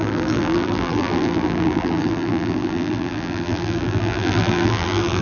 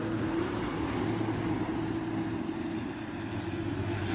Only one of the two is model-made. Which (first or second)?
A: first